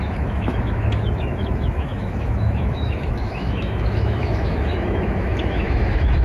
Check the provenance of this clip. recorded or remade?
remade